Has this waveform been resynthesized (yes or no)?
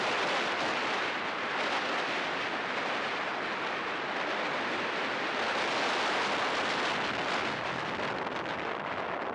no